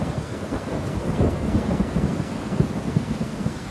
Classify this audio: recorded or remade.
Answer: remade